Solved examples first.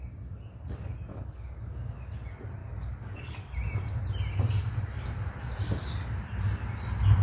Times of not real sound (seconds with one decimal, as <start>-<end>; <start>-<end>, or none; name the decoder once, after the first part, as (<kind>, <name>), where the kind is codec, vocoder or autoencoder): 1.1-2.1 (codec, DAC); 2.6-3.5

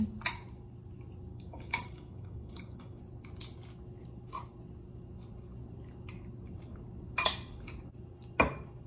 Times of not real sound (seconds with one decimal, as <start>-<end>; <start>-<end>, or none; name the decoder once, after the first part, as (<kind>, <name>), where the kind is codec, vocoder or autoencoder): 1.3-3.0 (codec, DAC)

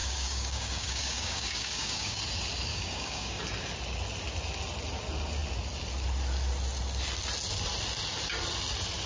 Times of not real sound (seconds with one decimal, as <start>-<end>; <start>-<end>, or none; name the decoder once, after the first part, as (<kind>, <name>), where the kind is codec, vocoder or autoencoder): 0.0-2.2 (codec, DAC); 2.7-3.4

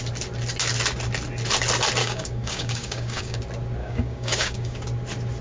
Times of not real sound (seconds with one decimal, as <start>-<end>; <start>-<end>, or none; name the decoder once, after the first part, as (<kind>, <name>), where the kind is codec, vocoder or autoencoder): 2.0-3.4 (codec, DAC); 3.8-4.8